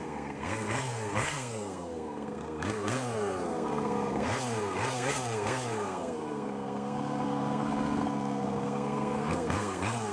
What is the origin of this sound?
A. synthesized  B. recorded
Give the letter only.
A